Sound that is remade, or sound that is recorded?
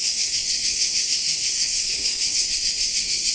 remade